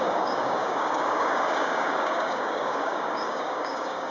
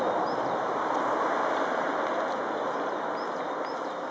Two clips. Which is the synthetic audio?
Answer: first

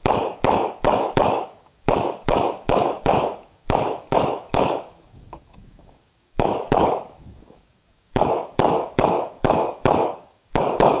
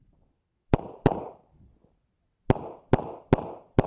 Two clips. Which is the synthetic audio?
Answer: first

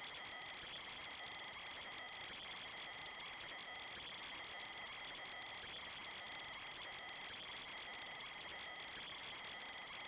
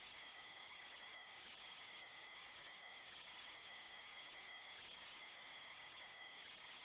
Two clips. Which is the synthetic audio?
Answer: second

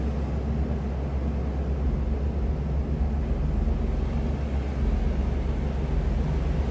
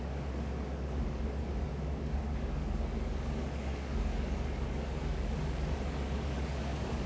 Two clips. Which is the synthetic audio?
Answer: second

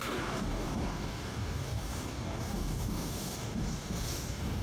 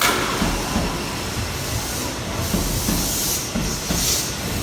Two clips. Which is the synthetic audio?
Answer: first